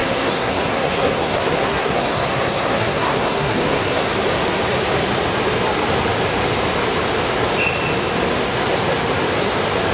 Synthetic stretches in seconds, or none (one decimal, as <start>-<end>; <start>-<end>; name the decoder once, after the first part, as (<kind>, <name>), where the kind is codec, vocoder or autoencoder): 0.0-4.1 (codec, SNAC)